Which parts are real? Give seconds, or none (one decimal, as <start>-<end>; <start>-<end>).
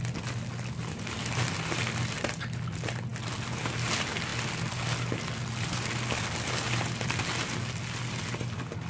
0.0-8.9